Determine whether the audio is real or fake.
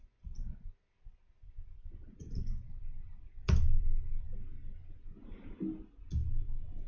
real